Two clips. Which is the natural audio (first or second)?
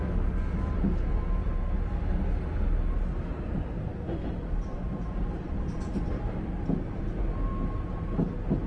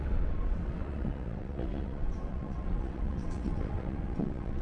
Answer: first